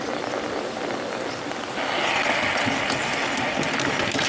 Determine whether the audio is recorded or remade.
recorded